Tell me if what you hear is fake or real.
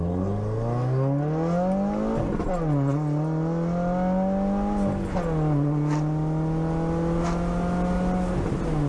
real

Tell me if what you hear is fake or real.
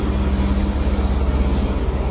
real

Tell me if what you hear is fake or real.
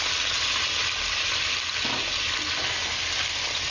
real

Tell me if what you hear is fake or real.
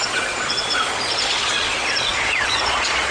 fake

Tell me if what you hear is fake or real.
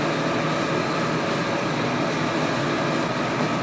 real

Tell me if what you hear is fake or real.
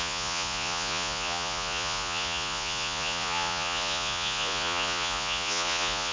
fake